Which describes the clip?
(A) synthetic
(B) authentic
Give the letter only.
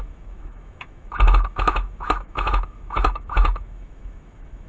A